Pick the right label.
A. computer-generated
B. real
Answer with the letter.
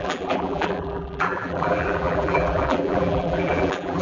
A